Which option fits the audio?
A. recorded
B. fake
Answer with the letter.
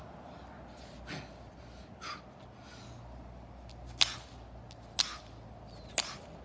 A